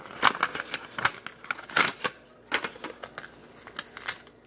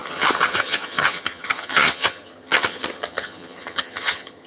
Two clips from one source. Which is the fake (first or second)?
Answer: second